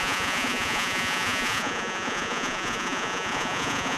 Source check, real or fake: fake